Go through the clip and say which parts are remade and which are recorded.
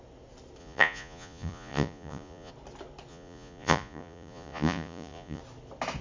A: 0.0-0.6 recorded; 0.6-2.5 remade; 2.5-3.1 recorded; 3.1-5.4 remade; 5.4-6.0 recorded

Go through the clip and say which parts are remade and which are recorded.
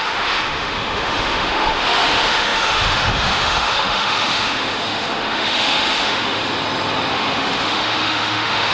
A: 0.0-6.4 remade; 6.4-7.1 recorded; 7.1-8.7 remade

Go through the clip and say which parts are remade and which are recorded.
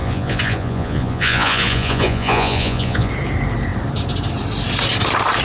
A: 0.0-3.1 remade; 3.1-5.4 recorded